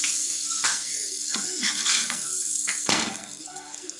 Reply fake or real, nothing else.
fake